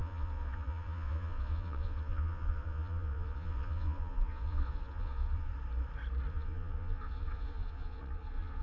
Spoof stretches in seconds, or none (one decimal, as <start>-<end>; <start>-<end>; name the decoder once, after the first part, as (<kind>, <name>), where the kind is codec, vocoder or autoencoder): 0.0-5.5 (vocoder, Vocos); 6.3-8.6